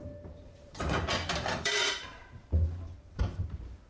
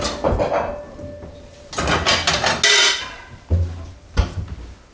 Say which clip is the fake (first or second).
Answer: first